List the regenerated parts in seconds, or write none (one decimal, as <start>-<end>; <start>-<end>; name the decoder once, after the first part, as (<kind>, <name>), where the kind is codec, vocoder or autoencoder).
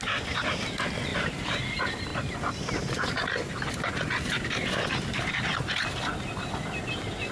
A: 1.1-1.6 (vocoder, BigVGAN v2)